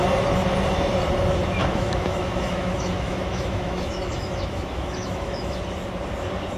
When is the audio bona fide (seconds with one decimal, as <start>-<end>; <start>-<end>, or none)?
0.0-1.6; 5.6-6.6